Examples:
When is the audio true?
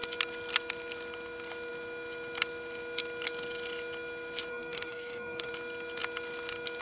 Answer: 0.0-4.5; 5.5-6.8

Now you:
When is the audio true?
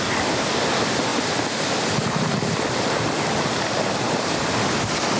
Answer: 0.0-5.2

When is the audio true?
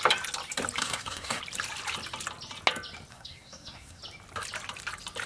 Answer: 0.0-0.8; 1.4-3.1; 4.0-5.3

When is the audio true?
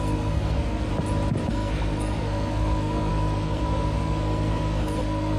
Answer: 0.9-1.5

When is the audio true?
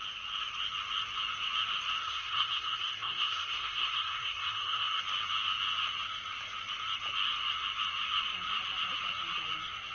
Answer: 0.0-2.0; 5.0-9.9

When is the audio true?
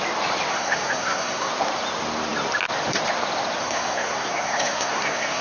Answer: 0.0-0.5; 1.5-3.6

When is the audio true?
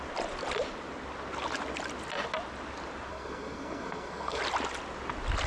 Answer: 0.0-3.1; 4.4-5.5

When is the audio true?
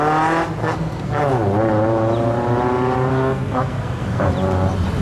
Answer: 0.0-0.6; 1.2-3.1; 4.3-5.0